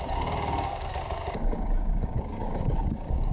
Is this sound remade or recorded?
remade